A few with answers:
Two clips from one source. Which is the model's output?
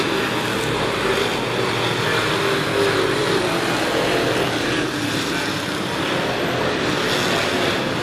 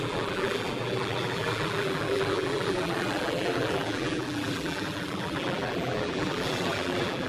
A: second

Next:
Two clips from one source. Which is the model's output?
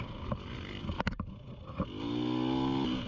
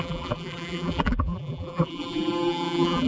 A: second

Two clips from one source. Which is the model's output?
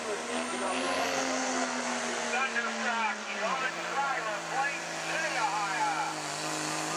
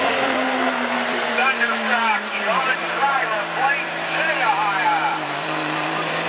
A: second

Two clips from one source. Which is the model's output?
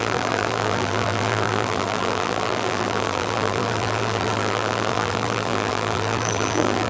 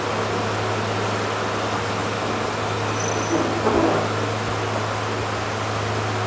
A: first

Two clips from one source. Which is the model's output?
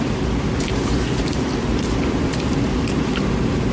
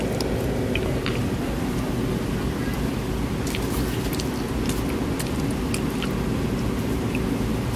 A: first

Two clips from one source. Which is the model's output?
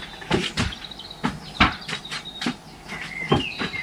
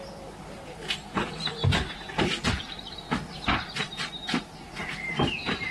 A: second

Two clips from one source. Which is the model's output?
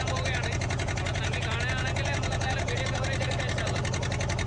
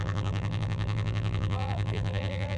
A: second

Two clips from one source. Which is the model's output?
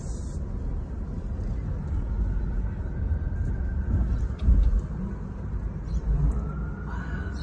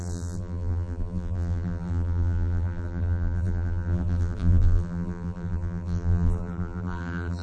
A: second